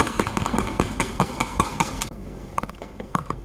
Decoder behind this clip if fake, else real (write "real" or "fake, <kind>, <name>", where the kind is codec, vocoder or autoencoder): fake, codec, SNAC